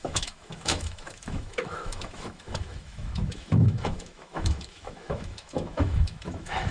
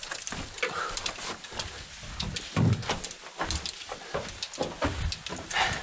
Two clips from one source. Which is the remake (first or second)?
first